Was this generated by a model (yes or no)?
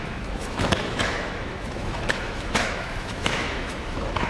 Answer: yes